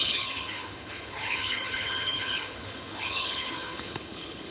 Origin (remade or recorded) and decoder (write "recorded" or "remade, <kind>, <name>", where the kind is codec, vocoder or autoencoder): remade, codec, HILCodec